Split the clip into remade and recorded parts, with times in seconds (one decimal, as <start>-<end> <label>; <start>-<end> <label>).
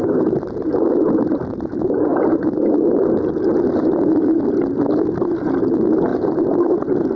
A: 0.0-7.2 recorded